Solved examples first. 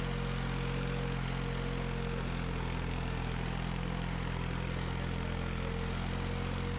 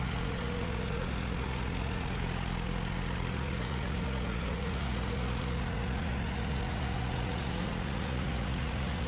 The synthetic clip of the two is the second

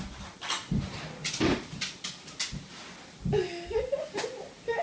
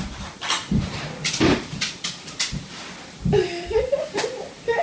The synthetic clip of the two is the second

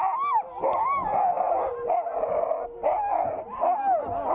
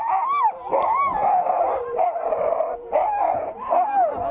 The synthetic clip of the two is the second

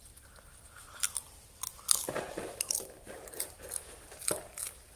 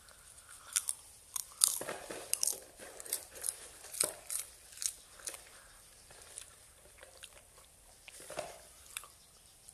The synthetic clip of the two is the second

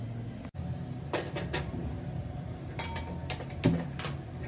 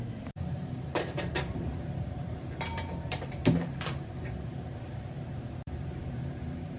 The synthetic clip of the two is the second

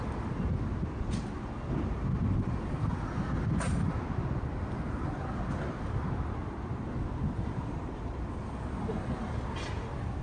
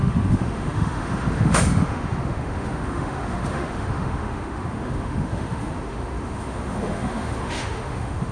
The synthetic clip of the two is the second